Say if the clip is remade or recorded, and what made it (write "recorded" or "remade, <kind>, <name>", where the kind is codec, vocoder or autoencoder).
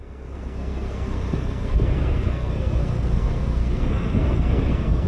remade, codec, SNAC